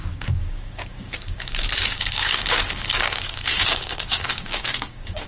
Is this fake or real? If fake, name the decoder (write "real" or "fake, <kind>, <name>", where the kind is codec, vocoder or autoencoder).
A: fake, codec, DAC